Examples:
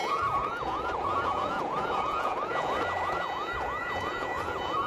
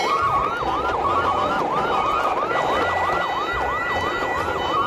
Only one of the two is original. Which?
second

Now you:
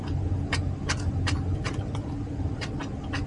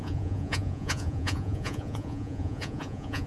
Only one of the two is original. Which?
first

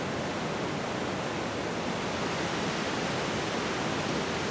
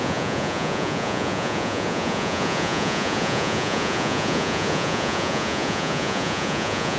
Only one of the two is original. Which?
first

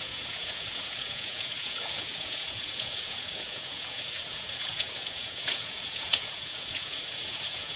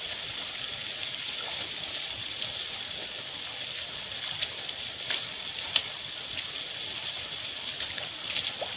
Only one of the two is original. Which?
second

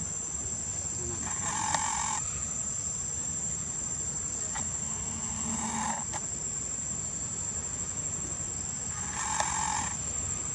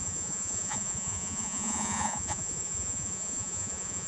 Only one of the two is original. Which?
first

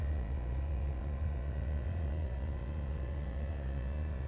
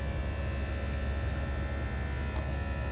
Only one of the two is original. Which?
second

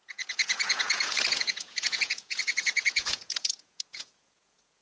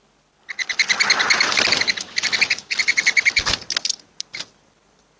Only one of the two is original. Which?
second